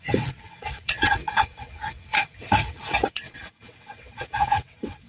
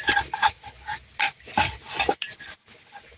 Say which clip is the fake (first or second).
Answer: first